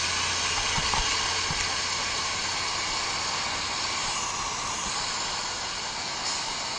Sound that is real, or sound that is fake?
real